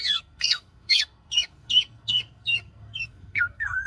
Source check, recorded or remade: remade